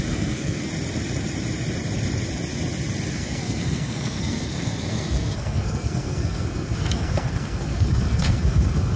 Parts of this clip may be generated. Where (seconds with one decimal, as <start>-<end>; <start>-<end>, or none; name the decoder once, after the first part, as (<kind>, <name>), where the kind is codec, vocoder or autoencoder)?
0.0-0.7 (codec, SNAC); 3.1-9.0